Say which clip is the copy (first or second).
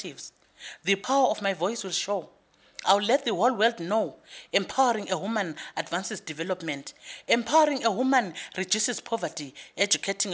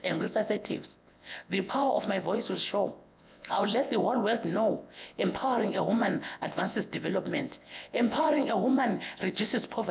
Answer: second